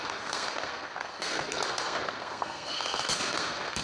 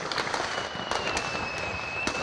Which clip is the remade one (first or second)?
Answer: first